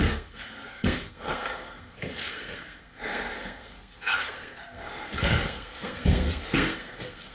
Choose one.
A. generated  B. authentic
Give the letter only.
A